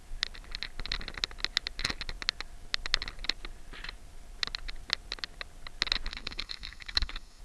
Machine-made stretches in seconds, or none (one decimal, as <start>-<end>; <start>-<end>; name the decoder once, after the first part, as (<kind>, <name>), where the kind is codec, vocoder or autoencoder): 6.1-7.4 (codec, SNAC)